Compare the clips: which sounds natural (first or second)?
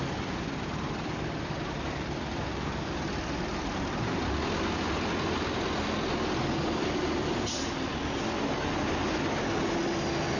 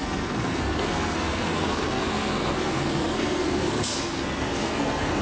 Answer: first